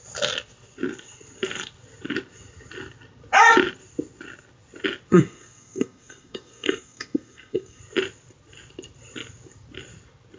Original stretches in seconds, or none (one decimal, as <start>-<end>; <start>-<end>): 0.0-5.1; 7.8-10.4